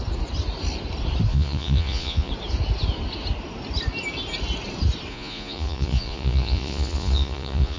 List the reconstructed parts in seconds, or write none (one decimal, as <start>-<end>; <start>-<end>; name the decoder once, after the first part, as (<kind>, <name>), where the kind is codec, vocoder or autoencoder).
1.3-2.3 (vocoder, Vocos); 5.1-7.8